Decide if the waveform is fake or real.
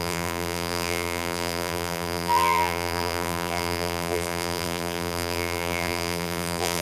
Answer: fake